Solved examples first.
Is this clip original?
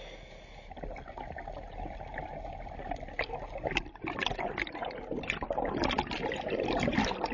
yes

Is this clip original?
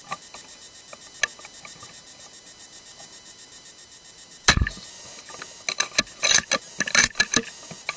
yes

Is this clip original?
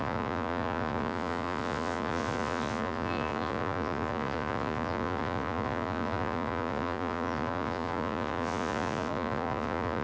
no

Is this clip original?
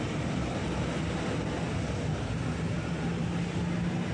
yes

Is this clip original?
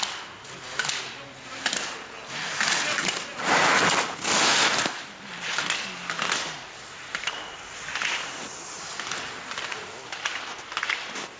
yes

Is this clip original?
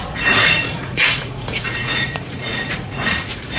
no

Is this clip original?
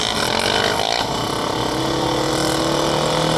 yes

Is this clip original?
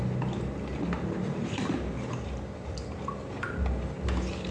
yes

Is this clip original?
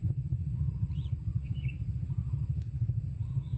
no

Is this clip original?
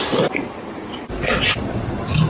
yes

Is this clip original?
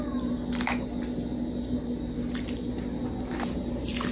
yes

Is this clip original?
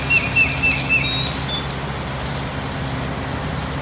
yes